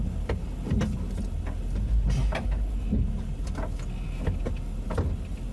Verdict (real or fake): real